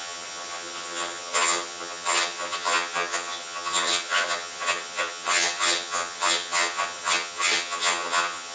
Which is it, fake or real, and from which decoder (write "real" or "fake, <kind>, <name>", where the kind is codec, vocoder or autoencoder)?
fake, vocoder, HiFi-GAN